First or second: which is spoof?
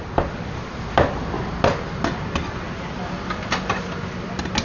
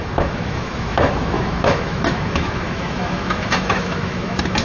second